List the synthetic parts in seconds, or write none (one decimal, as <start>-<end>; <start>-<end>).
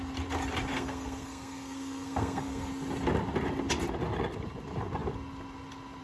0.7-2.7